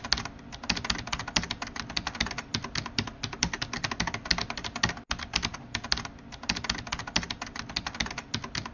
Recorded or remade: recorded